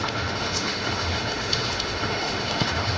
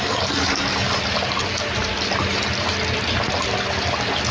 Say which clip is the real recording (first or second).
second